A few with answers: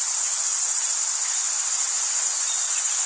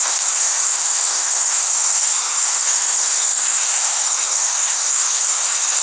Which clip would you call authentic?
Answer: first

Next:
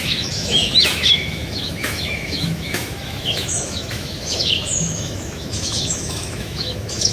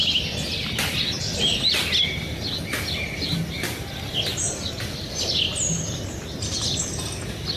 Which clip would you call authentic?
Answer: second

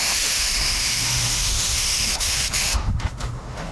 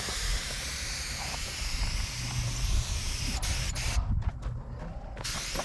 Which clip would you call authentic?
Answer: second